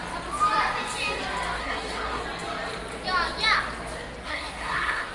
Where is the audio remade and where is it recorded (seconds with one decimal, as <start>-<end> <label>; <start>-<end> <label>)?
0.0-1.6 recorded; 1.6-2.2 remade; 2.2-4.2 recorded; 4.2-5.1 remade